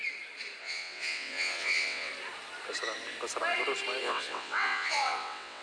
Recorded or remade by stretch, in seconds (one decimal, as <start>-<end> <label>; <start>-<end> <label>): 0.0-0.6 recorded; 0.6-2.1 remade; 2.1-4.0 recorded; 4.0-5.6 remade